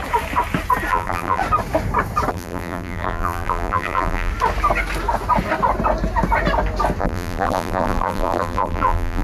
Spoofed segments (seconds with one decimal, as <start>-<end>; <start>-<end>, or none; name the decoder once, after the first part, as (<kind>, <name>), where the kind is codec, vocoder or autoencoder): 0.9-1.4 (vocoder, BigVGAN v2); 2.3-4.3; 7.0-9.2